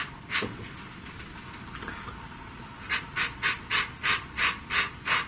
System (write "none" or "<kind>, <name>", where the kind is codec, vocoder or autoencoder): none